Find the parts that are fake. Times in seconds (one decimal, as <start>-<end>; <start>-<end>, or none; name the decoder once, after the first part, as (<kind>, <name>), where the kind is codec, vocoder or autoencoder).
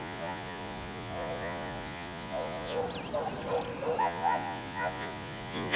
0.0-2.8 (vocoder, Vocos); 4.0-5.8